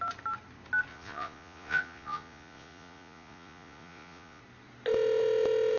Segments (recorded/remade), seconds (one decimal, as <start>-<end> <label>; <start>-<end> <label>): 0.0-0.9 recorded; 0.9-4.4 remade; 4.4-5.8 recorded